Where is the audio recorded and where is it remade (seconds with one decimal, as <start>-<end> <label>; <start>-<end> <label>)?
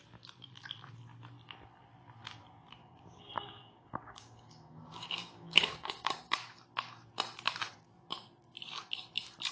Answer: 0.0-2.8 recorded; 2.8-6.1 remade; 6.1-9.5 recorded